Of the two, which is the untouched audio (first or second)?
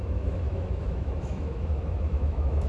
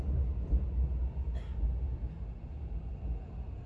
second